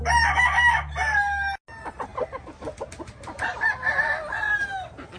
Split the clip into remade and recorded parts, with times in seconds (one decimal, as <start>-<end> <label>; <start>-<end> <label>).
0.0-5.2 recorded